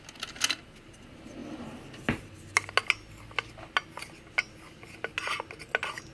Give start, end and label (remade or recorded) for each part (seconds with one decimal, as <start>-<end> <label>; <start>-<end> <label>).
0.0-6.1 recorded